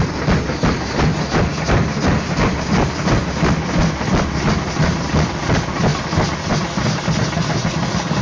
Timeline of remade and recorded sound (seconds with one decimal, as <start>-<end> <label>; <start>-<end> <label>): 0.0-5.9 recorded; 5.9-6.5 remade; 6.5-8.2 recorded